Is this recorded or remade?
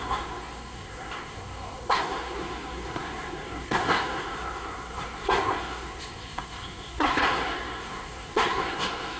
remade